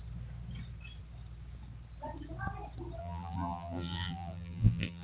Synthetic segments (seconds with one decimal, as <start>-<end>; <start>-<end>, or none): 3.0-5.0